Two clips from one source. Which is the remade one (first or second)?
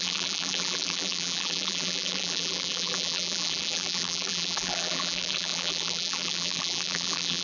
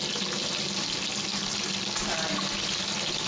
first